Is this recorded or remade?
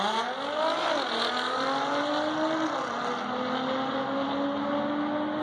recorded